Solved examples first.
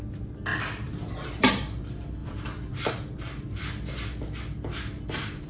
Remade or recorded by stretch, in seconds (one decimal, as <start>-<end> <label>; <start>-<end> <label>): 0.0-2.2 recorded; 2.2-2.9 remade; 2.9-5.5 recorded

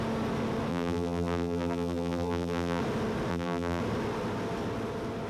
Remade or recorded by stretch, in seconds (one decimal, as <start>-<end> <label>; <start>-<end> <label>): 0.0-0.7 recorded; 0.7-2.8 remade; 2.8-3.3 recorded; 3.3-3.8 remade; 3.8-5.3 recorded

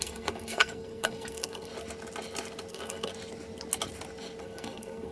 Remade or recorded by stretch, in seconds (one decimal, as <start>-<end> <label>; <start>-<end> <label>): 0.0-1.7 remade; 1.7-2.7 recorded; 2.7-3.1 remade; 3.1-4.4 recorded; 4.4-5.1 remade

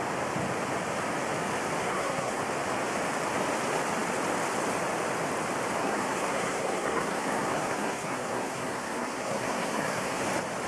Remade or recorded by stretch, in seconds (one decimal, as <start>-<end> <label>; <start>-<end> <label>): 0.0-1.8 recorded; 1.8-2.4 remade; 2.4-5.8 recorded; 5.8-10.2 remade; 10.2-10.7 recorded

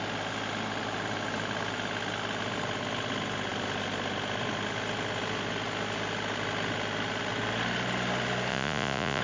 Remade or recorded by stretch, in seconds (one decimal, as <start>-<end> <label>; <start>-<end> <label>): 0.0-8.5 recorded; 8.5-9.2 remade

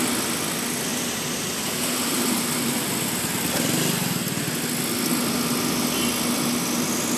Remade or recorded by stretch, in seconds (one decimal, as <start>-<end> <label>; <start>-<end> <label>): 0.0-0.9 recorded; 0.9-2.9 remade; 2.9-7.2 recorded

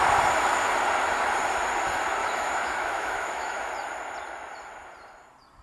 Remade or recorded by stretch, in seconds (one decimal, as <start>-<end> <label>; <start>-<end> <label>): 0.0-2.2 recorded; 2.2-3.7 remade; 3.7-5.6 recorded